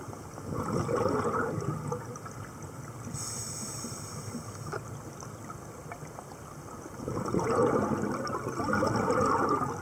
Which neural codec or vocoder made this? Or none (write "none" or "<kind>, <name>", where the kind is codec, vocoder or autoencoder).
none